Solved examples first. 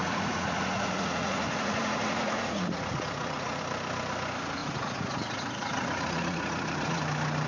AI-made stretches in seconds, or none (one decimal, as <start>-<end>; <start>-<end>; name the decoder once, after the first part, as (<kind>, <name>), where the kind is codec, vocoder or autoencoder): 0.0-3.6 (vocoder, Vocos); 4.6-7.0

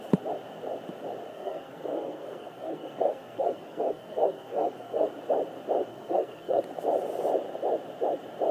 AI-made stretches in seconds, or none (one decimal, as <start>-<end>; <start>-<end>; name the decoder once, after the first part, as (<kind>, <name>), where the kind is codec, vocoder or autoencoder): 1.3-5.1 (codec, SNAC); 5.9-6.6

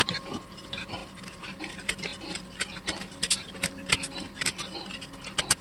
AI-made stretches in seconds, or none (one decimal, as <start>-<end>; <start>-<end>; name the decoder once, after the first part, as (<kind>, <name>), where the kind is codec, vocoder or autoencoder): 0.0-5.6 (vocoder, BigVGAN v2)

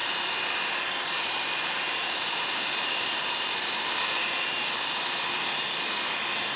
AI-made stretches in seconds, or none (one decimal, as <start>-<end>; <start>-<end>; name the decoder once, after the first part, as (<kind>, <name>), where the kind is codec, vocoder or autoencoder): 0.0-6.6 (vocoder, BigVGAN v2)

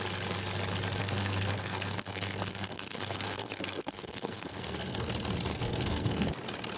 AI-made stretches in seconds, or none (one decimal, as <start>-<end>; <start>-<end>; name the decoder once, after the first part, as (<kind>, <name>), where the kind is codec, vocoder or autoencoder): 1.0-5.1 (codec, SNAC); 5.5-6.3

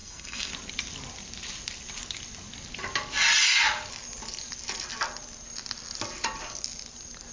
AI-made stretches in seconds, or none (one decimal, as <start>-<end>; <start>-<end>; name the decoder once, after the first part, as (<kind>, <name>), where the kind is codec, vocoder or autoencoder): 0.0-0.5 (codec, SNAC)

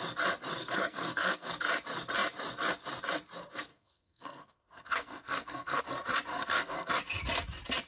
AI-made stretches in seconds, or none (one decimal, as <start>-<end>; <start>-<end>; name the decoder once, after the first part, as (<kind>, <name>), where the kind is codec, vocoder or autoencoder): 0.6-1.5 (codec, SNAC); 3.7-5.8; 6.3-6.9